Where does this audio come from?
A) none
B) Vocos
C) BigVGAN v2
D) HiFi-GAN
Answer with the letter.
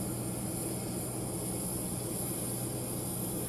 A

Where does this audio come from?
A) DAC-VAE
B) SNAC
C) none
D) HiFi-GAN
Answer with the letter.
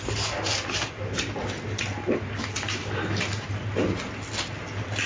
C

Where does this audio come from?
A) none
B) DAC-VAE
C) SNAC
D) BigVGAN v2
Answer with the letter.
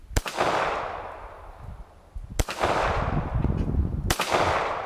A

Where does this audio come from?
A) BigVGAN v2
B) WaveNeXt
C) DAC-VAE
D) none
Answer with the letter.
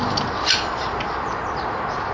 D